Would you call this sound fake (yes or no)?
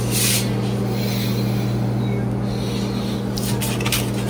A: no